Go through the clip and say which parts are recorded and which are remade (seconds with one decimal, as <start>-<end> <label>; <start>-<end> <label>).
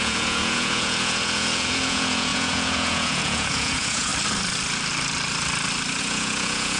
0.0-4.1 remade; 4.1-6.0 recorded; 6.0-6.8 remade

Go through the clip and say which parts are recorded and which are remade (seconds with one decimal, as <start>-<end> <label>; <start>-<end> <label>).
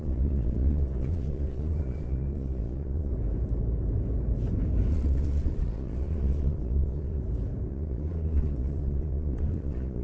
0.0-3.1 remade; 3.1-4.9 recorded; 4.9-7.2 remade; 7.2-7.7 recorded; 7.7-10.0 remade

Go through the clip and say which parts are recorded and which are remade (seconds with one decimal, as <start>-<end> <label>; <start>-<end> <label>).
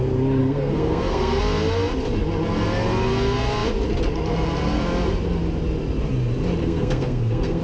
0.0-0.4 recorded; 0.4-1.4 remade; 1.4-6.6 recorded; 6.6-7.6 remade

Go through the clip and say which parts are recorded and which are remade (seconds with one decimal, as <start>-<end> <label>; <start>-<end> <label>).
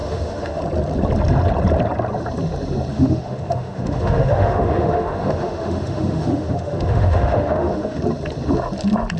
0.0-0.6 remade; 0.6-2.9 recorded; 2.9-8.0 remade; 8.0-9.2 recorded